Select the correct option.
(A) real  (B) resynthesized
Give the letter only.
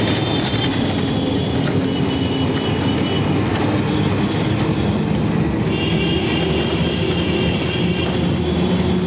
A